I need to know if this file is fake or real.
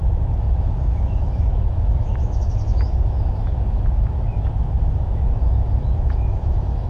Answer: fake